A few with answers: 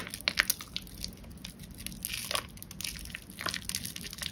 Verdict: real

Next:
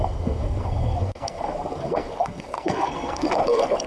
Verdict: fake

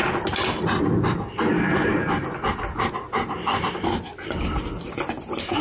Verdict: real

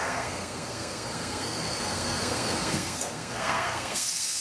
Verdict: fake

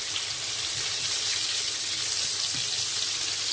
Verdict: real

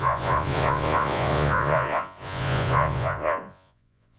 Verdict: fake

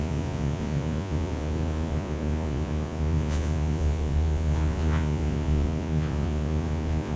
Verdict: fake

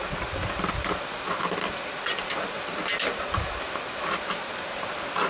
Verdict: real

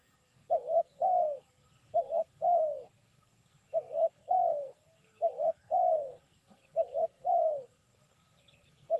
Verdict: fake